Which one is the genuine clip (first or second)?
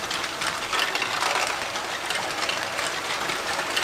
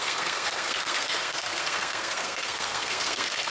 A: first